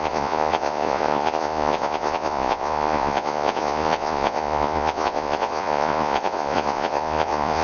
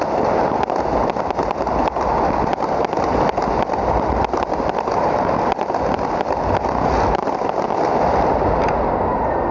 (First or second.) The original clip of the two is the second